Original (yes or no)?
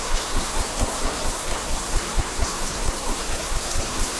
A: no